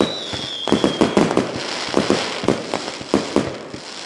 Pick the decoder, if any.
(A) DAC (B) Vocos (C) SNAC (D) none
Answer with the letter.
D